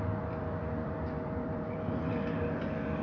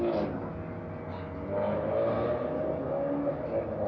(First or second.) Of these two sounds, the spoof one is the first